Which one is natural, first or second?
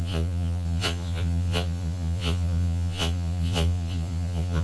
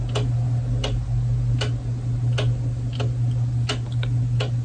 second